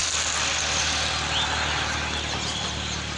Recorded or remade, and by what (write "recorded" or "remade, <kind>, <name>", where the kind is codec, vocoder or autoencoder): recorded